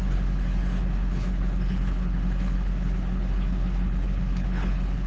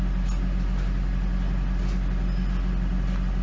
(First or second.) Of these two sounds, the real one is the second